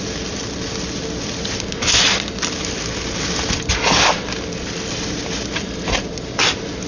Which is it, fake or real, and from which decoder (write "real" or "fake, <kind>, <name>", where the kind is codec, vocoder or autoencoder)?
real